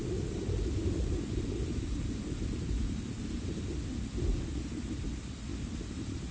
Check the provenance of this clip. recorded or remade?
recorded